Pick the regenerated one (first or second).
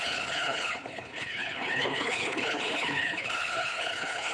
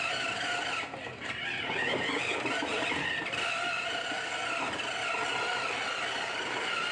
first